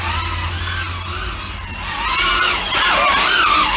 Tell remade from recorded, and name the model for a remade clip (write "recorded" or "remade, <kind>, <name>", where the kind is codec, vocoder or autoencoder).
recorded